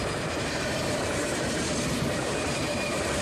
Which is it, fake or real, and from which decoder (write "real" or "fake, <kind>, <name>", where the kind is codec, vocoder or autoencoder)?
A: fake, vocoder, BigVGAN v2